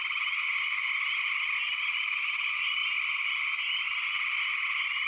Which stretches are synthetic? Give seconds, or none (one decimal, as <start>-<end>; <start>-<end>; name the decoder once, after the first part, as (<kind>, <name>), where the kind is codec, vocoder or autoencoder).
none